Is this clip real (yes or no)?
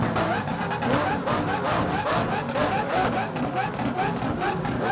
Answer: yes